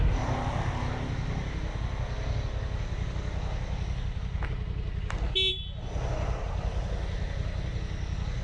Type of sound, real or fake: real